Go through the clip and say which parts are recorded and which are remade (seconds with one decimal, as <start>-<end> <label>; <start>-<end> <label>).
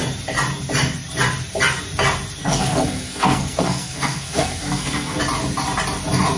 0.0-2.4 recorded; 2.4-5.2 remade; 5.2-6.4 recorded